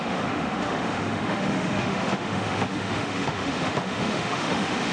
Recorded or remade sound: remade